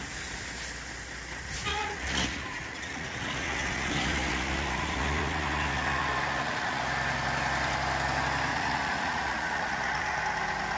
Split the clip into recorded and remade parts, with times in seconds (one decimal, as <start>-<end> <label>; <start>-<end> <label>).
0.0-1.7 recorded; 1.7-6.8 remade; 6.8-8.5 recorded; 8.5-10.2 remade; 10.2-10.8 recorded